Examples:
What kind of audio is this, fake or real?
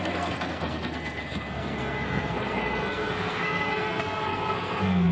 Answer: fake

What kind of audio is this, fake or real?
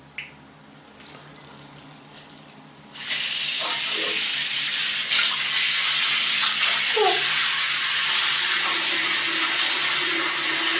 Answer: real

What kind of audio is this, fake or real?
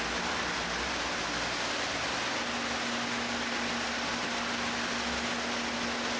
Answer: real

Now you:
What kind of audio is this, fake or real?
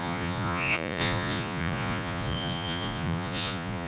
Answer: fake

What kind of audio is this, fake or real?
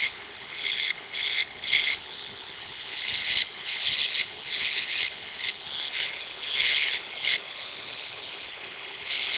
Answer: fake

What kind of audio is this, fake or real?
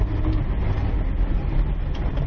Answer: real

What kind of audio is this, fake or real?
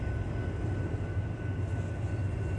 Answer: real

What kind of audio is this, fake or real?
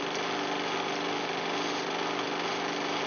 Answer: real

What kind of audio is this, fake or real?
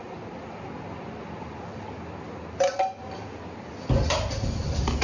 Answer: real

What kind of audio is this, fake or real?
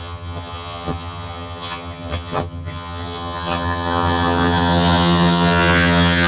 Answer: fake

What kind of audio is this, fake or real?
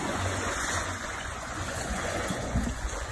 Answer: fake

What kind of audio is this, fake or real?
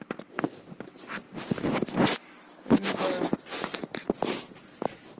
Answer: real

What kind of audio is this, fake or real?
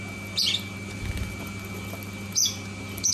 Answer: real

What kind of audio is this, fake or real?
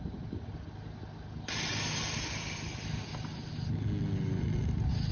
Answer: real